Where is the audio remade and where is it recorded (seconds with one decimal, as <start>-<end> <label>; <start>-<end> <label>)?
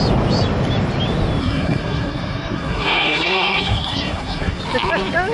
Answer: 0.0-1.4 recorded; 1.4-4.6 remade; 4.6-5.3 recorded